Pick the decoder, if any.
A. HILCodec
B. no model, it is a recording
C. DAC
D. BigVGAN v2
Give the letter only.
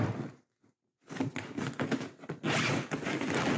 B